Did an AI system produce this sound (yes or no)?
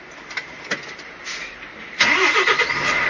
no